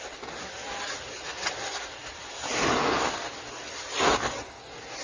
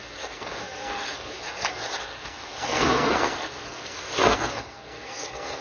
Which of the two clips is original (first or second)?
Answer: first